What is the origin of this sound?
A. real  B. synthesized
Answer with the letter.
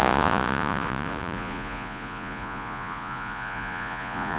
B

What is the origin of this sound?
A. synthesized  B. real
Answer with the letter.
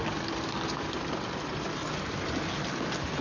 B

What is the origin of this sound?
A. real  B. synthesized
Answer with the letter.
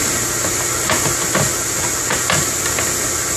A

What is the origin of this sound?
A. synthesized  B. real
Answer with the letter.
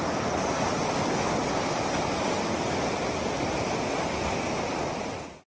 B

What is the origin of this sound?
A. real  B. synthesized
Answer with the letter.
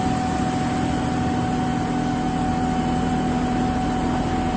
A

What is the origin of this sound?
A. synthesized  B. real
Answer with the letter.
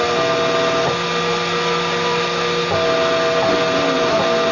B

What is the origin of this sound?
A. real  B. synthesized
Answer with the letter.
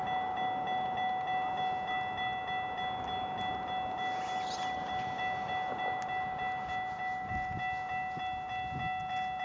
A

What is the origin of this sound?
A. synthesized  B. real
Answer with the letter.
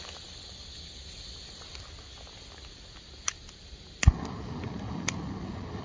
B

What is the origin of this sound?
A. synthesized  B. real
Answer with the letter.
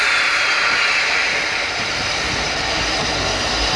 A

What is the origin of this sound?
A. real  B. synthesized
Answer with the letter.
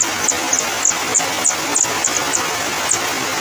A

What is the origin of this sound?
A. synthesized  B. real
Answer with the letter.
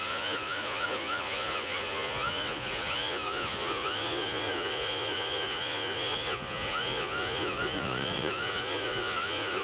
A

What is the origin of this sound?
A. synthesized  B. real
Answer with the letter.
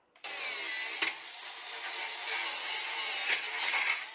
B